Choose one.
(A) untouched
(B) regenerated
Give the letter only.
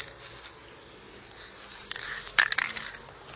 A